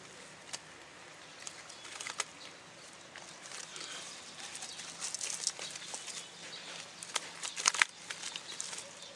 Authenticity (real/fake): real